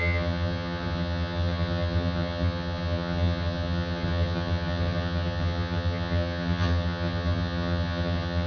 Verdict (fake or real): fake